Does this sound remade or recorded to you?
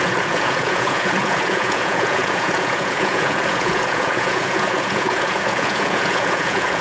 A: remade